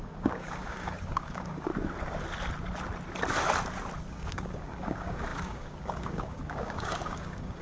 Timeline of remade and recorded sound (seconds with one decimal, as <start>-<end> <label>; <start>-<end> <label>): 0.0-1.7 remade; 1.7-4.1 recorded; 4.1-7.6 remade